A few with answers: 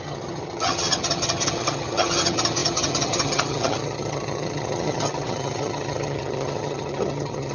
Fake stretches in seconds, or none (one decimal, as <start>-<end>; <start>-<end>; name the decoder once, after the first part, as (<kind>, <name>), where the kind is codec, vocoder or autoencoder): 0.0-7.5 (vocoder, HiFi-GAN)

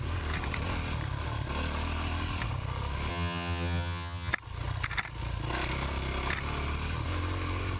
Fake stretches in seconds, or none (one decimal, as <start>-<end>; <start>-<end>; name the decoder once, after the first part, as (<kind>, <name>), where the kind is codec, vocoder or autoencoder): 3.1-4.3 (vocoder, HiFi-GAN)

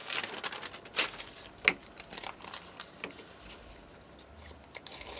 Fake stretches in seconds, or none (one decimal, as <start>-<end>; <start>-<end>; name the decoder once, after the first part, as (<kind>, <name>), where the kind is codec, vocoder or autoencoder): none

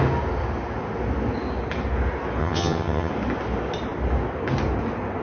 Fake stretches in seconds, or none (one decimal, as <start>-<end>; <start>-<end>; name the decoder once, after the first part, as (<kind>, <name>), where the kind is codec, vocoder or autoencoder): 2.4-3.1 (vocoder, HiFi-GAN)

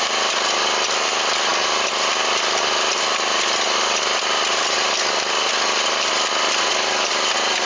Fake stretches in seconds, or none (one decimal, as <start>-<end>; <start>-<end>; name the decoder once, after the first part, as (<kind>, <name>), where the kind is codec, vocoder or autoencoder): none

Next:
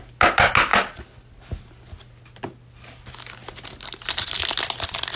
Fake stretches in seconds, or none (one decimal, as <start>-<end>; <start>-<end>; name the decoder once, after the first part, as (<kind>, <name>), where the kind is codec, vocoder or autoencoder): none

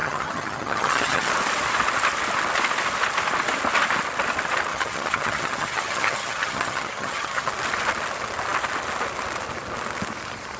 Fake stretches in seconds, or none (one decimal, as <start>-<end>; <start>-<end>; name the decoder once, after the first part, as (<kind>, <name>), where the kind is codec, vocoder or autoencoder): 0.0-1.3 (vocoder, HiFi-GAN); 4.7-7.5